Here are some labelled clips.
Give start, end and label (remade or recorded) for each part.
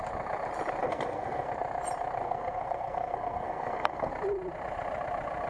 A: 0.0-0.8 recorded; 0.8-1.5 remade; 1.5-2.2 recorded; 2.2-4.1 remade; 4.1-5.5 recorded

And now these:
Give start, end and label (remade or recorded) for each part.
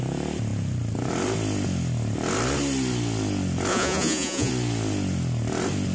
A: 0.0-3.7 recorded; 3.7-4.5 remade; 4.5-5.9 recorded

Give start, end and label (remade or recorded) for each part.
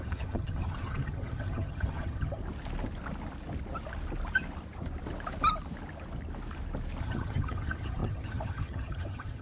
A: 0.0-2.4 remade; 2.4-7.0 recorded; 7.0-9.4 remade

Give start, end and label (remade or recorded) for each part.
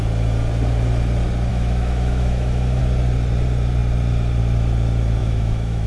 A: 0.0-1.5 recorded; 1.5-2.8 remade; 2.8-5.2 recorded; 5.2-5.9 remade